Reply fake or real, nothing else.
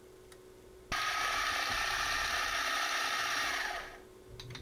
real